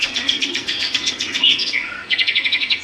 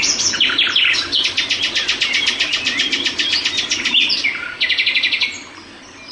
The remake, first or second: first